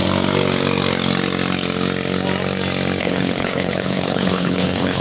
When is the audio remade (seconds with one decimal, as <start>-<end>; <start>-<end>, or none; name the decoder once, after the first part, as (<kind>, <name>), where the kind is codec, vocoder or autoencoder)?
3.0-5.0 (codec, HILCodec)